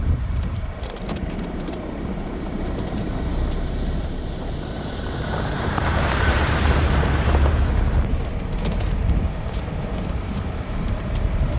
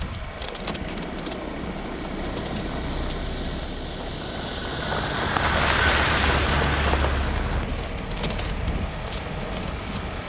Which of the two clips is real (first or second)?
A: second